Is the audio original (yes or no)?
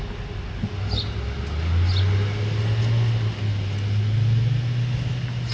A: yes